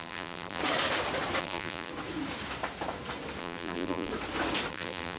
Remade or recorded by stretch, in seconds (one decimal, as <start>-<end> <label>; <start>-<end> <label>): 0.0-0.6 remade; 0.6-1.4 recorded; 1.4-1.9 remade; 1.9-3.4 recorded; 3.4-4.1 remade; 4.1-4.7 recorded; 4.7-5.2 remade